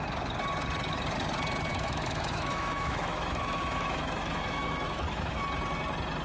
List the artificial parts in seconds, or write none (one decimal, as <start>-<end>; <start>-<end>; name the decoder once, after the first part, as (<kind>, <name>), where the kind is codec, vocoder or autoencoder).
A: 1.7-5.4 (autoencoder, DAC-VAE)